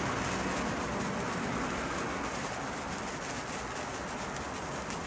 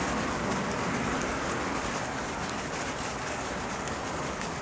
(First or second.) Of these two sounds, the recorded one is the first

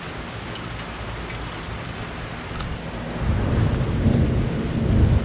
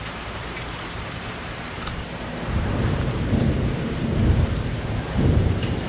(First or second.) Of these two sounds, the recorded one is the first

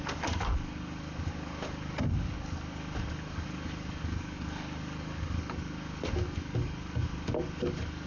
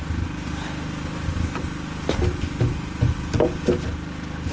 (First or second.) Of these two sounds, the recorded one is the second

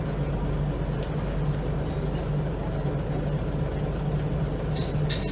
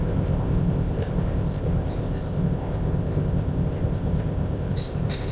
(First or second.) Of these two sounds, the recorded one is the first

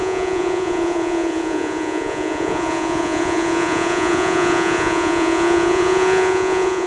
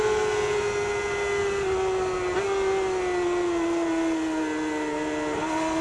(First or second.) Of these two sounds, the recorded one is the second